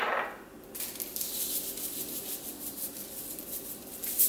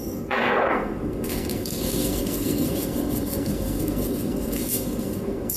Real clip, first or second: first